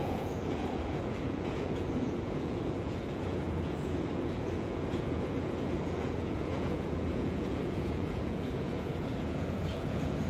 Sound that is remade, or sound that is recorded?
remade